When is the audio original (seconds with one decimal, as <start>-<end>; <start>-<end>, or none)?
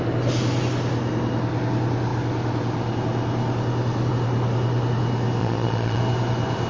0.0-5.4; 6.0-6.7